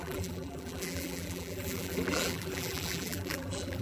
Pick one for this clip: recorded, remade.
remade